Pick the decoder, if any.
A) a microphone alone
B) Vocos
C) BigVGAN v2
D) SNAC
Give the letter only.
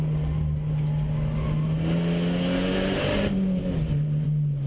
A